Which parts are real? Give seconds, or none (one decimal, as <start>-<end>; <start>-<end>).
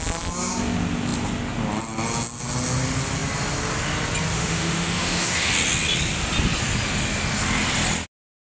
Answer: 0.0-4.3; 5.5-8.5